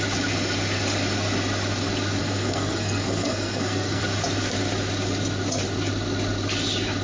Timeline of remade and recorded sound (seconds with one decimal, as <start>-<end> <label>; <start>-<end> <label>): 0.0-2.2 recorded; 2.2-4.0 remade; 4.0-7.0 recorded